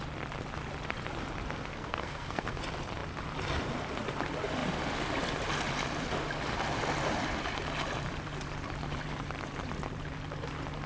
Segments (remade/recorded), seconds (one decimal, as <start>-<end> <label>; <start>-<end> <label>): 0.0-1.7 recorded; 1.7-2.6 remade; 2.6-10.9 recorded